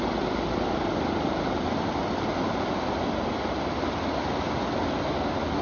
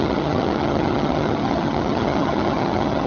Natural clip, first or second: first